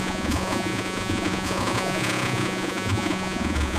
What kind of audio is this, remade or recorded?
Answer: remade